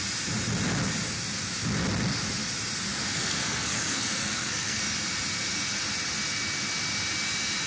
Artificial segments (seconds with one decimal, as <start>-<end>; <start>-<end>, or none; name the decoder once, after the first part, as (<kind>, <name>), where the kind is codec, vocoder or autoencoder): 3.1-4.8 (codec, SNAC)